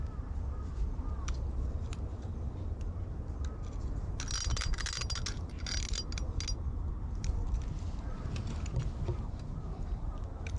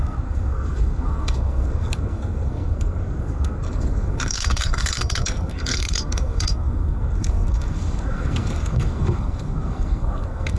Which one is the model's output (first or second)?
second